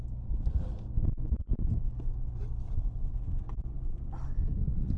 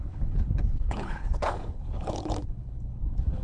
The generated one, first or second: second